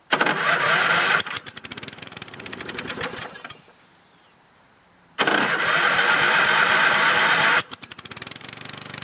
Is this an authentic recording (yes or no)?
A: no